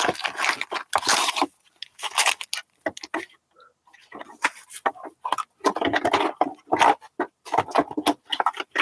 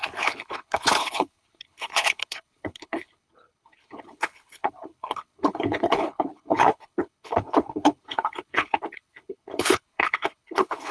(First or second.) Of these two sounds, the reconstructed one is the second